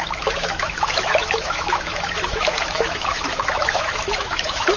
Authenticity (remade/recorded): remade